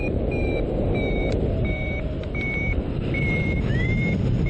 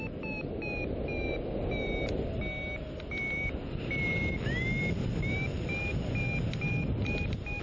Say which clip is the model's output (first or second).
first